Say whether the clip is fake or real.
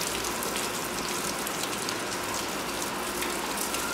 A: real